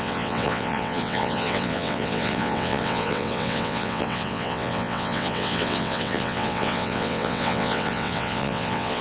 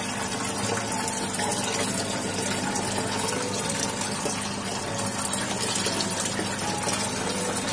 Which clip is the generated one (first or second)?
first